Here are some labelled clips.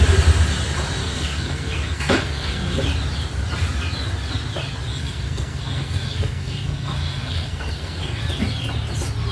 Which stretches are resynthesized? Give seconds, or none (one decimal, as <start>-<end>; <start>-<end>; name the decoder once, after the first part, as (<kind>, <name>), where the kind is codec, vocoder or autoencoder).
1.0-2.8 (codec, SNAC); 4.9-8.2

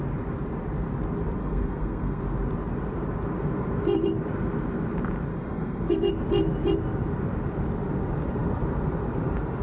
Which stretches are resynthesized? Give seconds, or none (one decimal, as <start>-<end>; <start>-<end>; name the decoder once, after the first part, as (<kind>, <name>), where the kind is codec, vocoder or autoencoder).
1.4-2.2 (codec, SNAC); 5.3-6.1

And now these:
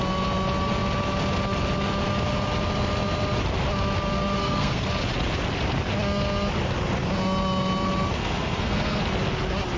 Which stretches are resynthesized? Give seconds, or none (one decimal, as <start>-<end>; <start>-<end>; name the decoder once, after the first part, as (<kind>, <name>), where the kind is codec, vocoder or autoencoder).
4.4-4.9 (codec, SNAC); 8.2-9.0

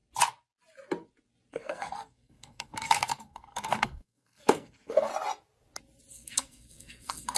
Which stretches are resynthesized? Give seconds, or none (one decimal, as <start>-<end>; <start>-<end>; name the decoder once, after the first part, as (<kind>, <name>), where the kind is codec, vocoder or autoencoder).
1.5-5.1 (codec, SNAC); 6.1-7.4

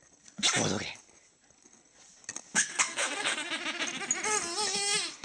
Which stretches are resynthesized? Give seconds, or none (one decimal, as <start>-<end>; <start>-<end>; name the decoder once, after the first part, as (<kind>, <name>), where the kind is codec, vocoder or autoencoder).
2.6-3.5 (codec, SNAC)

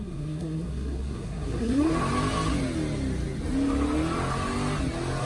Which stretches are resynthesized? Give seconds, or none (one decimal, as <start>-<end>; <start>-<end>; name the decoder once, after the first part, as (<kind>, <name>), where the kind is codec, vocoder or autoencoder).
0.0-1.9 (codec, SNAC)